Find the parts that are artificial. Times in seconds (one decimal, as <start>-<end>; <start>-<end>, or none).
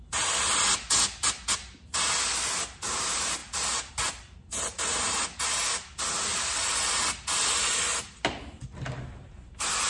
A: none